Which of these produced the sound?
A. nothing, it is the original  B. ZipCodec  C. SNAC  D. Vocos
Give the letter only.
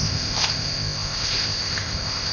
B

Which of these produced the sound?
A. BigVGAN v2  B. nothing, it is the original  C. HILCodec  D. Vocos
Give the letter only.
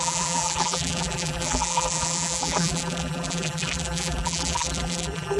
A